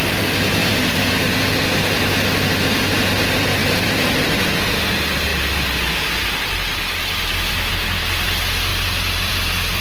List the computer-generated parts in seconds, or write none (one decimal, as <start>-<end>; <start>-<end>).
0.6-1.4; 3.6-4.4; 8.7-9.3